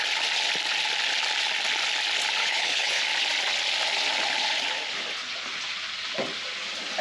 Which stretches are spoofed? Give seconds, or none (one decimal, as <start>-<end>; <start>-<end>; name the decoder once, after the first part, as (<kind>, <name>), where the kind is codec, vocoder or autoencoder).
2.4-3.0 (codec, HILCodec)